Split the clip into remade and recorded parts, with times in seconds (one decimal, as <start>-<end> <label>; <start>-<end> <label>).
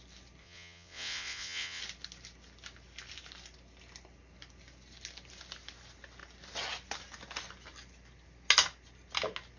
0.0-0.4 recorded; 0.4-1.8 remade; 1.8-9.6 recorded